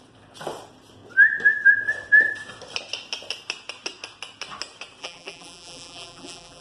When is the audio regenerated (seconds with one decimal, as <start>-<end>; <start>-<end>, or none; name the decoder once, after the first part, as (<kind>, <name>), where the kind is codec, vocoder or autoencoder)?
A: 5.0-6.6 (vocoder, BigVGAN v2)